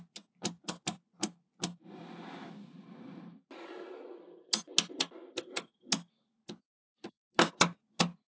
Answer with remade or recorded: recorded